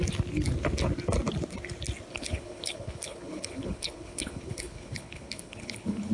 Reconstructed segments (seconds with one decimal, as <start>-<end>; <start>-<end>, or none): 2.1-6.1